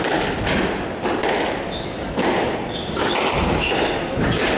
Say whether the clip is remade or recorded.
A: recorded